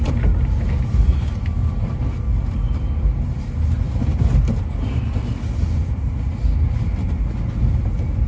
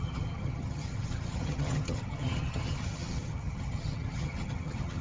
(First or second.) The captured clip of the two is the first